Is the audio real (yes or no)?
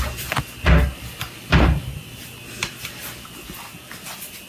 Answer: no